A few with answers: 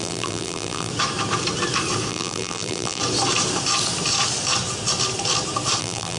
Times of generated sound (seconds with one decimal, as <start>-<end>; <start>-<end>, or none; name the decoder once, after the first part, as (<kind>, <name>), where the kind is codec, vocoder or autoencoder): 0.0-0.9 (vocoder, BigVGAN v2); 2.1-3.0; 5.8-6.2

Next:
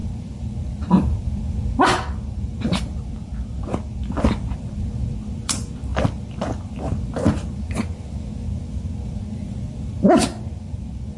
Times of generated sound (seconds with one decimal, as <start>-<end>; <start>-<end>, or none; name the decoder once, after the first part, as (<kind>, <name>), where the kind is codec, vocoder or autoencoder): 0.0-5.9 (vocoder, BigVGAN v2); 6.8-11.2

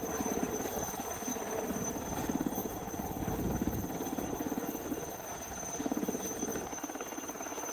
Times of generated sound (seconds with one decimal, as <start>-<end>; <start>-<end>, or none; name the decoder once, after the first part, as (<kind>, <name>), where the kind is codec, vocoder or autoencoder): 0.0-1.3 (vocoder, BigVGAN v2); 1.9-2.6; 5.2-6.5

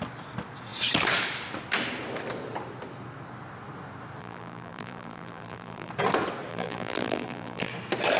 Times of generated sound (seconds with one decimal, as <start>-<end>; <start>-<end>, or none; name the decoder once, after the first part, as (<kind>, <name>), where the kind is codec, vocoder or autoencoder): 4.2-5.9 (vocoder, BigVGAN v2); 6.5-7.7

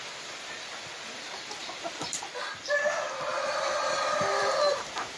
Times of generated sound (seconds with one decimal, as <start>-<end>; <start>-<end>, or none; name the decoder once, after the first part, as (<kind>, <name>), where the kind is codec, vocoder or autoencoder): 1.6-2.3 (vocoder, BigVGAN v2); 3.3-5.2

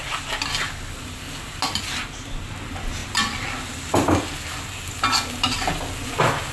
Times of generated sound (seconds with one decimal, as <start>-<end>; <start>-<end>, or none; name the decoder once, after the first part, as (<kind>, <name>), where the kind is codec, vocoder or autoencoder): none

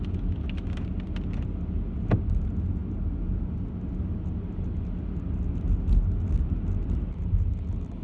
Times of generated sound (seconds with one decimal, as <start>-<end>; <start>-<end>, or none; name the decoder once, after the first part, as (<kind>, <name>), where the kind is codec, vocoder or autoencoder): 2.8-4.0 (vocoder, BigVGAN v2)